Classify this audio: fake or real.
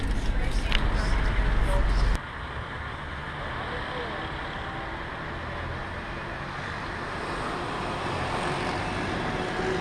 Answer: real